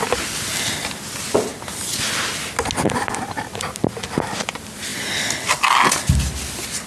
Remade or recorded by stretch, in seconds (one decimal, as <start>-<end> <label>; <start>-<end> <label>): 0.0-6.9 recorded